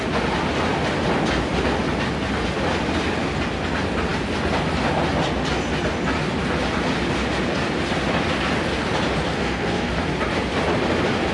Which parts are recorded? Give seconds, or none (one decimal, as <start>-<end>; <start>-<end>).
0.0-9.3; 9.9-11.3